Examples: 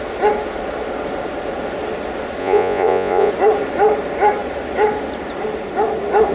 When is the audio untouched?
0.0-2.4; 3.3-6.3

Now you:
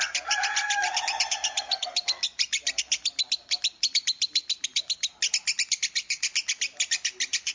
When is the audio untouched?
0.0-7.5

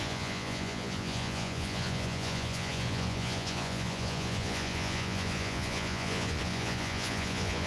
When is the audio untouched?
none

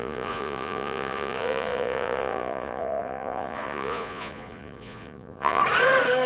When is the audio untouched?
5.6-6.3